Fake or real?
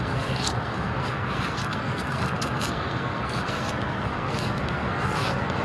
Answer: fake